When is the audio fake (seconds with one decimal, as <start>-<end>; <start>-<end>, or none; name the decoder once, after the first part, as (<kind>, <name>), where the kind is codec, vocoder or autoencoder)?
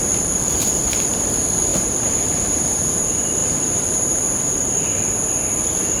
0.0-3.4 (vocoder, BigVGAN v2); 4.4-6.0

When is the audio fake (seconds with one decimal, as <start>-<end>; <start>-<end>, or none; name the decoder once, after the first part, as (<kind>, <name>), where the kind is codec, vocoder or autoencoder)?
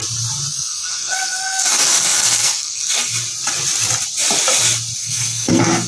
0.5-3.1 (codec, SNAC); 5.0-5.9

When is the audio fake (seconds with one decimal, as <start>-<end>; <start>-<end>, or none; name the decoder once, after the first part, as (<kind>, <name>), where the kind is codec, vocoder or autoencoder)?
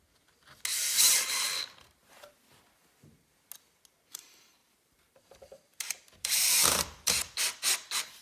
4.6-7.4 (vocoder, BigVGAN v2)